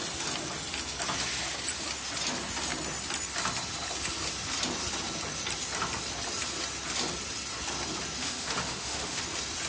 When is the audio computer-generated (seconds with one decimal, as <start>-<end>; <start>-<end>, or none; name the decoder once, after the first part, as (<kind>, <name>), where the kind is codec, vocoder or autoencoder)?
8.2-9.2 (autoencoder, DAC-VAE)